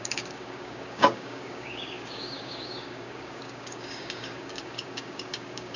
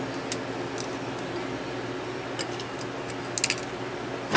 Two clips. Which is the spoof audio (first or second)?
first